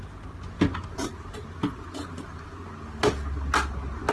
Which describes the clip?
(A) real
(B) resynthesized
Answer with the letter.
A